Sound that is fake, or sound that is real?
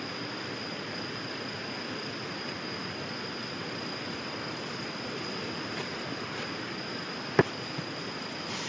real